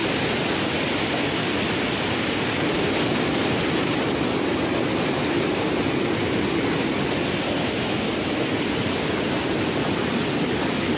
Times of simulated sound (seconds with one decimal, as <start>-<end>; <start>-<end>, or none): none